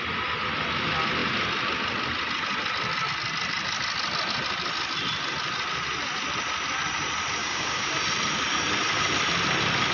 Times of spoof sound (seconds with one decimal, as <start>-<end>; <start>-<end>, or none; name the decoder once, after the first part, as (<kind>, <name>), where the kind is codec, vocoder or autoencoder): 7.4-7.9 (codec, DAC)